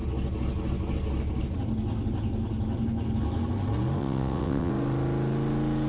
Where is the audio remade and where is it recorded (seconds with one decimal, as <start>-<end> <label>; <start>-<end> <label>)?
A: 0.0-4.0 recorded; 4.0-4.7 remade; 4.7-5.9 recorded